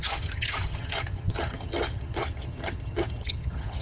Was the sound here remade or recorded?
remade